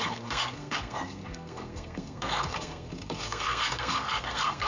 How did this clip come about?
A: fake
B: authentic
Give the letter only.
A